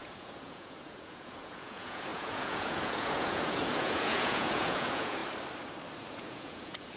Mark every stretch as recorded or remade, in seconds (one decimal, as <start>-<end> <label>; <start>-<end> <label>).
0.0-5.2 remade; 5.2-6.1 recorded; 6.1-7.0 remade